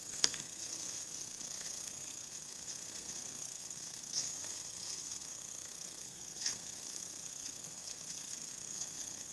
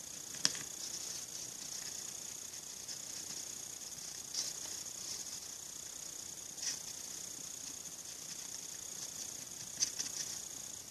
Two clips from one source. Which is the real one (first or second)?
second